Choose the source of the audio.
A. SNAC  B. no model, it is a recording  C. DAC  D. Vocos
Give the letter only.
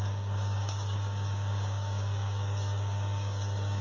C